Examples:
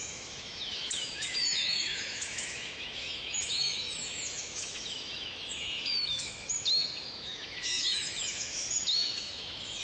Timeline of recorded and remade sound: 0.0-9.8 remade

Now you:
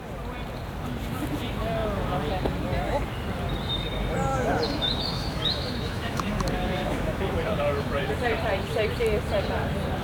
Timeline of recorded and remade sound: 0.0-4.3 recorded; 4.3-8.1 remade; 8.1-10.0 recorded

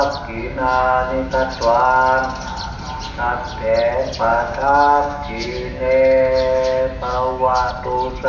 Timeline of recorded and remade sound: 0.0-0.4 recorded; 0.4-1.3 remade; 1.3-4.3 recorded; 4.3-7.7 remade; 7.7-8.3 recorded

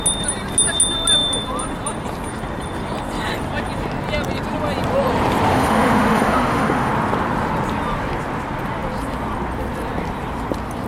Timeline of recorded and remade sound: 0.0-5.5 recorded; 5.5-6.9 remade; 6.9-10.9 recorded